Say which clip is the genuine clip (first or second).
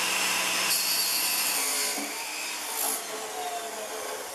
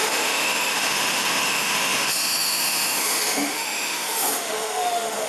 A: first